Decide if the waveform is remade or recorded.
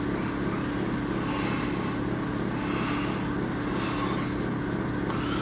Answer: recorded